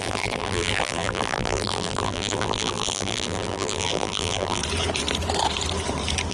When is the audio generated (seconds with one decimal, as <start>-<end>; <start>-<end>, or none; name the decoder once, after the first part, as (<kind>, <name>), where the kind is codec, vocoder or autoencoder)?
0.0-4.6 (vocoder, BigVGAN v2)